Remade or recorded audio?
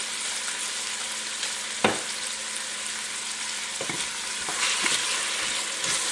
recorded